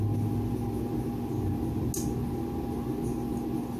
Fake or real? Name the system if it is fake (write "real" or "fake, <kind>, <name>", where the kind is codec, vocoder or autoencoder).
real